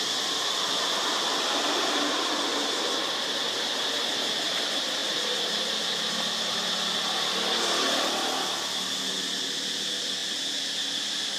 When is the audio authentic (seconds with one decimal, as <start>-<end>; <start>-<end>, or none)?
0.0-11.4